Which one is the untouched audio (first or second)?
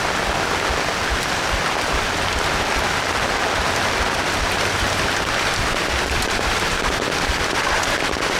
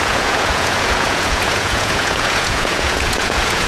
first